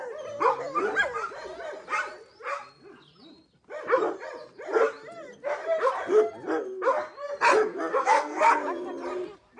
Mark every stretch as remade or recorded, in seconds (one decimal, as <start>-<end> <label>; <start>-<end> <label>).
0.0-7.9 recorded; 7.9-8.5 remade; 8.5-9.6 recorded